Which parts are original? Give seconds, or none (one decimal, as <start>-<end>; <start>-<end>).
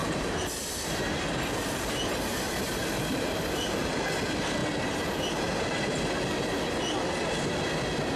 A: 0.6-2.8; 3.9-8.2